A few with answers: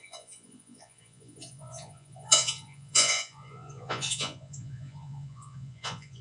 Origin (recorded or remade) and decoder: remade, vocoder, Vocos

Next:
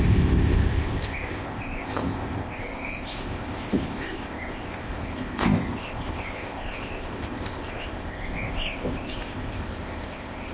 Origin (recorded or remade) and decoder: remade, codec, ZipCodec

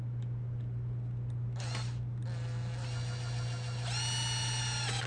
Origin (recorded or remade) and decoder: recorded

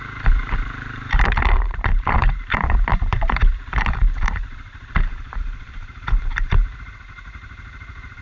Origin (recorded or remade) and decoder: remade, vocoder, BigVGAN v2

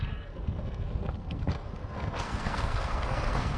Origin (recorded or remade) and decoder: remade, codec, SNAC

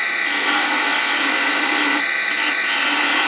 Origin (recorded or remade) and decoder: recorded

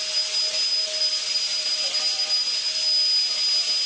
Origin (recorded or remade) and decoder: recorded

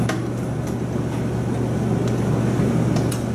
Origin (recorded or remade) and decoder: recorded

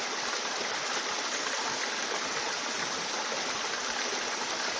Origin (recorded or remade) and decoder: recorded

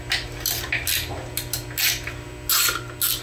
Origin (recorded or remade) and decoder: recorded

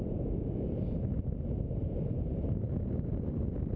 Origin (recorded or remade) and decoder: recorded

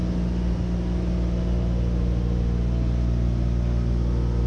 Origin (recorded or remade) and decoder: recorded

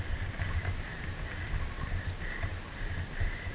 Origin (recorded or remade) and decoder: recorded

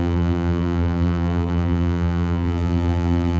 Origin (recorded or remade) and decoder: remade, vocoder, BigVGAN v2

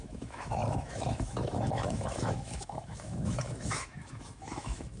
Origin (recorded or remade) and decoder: remade, autoencoder, DAC-VAE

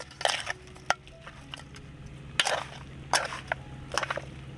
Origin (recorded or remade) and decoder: recorded